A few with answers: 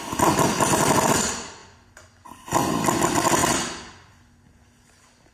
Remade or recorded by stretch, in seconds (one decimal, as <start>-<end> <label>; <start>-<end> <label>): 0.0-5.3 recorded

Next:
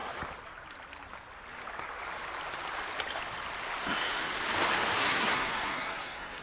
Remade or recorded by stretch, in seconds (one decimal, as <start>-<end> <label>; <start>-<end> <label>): 0.0-5.0 recorded; 5.0-6.4 remade

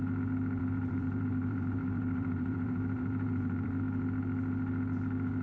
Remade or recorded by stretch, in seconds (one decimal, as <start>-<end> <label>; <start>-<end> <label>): 0.0-0.6 recorded; 0.6-3.8 remade; 3.8-5.4 recorded

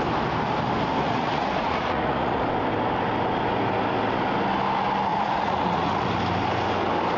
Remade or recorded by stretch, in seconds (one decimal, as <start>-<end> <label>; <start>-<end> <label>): 0.0-1.0 recorded; 1.0-2.4 remade; 2.4-5.1 recorded; 5.1-6.1 remade; 6.1-7.2 recorded